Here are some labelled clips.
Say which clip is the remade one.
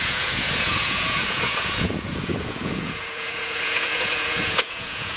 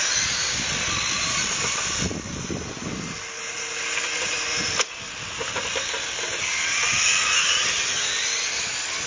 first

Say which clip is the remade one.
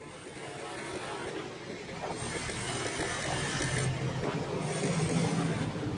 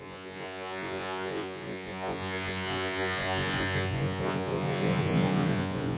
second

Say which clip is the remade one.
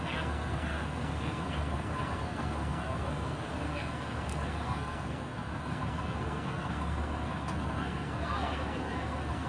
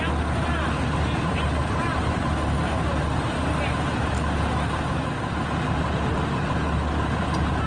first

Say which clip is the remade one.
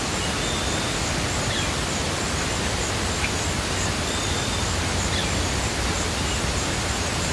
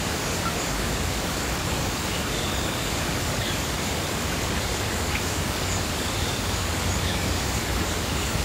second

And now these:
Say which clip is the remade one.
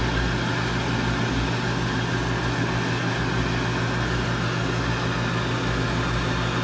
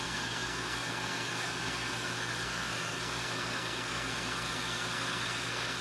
second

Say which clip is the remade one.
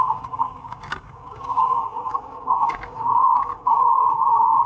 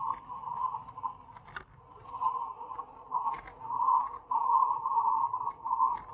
first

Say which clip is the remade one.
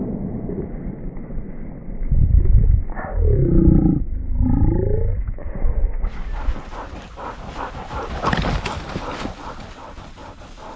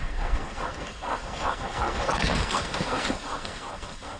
second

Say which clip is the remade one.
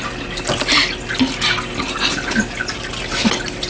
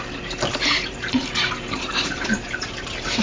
second